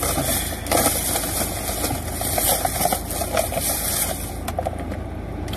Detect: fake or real real